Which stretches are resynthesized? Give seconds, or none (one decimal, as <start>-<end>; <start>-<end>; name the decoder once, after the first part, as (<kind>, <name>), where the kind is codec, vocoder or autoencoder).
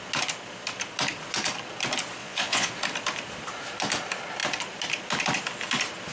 2.2-2.7 (vocoder, Vocos)